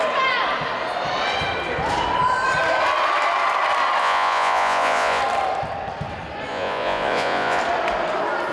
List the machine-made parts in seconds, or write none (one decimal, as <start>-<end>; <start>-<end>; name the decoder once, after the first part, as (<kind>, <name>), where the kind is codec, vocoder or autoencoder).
4.0-5.2 (vocoder, Vocos); 6.5-7.6